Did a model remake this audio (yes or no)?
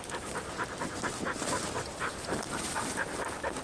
no